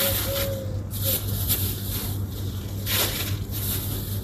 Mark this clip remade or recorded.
recorded